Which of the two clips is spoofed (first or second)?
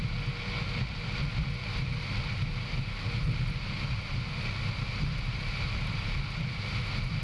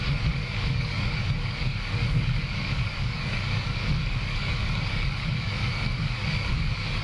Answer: second